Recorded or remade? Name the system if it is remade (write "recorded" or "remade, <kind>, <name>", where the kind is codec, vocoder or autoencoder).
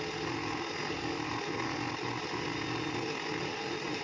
recorded